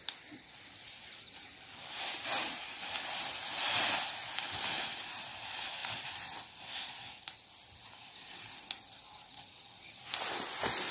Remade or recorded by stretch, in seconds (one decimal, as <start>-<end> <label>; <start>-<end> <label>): 0.0-10.9 recorded